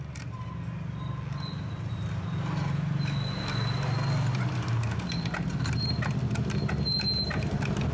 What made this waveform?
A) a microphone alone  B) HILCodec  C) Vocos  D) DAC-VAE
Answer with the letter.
A